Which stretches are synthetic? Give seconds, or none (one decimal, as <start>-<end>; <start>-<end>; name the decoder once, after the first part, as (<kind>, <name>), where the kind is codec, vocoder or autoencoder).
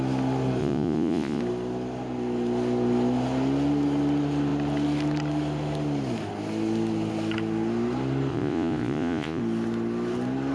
0.6-1.4 (vocoder, Vocos); 8.3-9.4